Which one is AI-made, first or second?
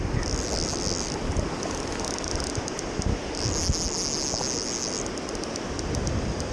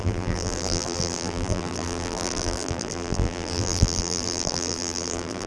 second